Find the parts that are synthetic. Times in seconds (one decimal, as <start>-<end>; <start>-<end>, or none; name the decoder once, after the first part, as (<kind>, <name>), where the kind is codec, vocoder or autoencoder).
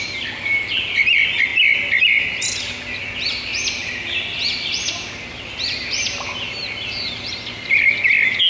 none